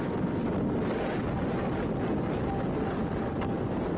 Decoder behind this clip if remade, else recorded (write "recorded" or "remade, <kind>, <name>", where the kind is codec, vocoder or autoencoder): recorded